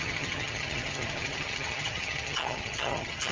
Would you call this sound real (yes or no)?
no